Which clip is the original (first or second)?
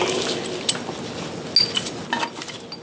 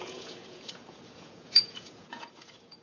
first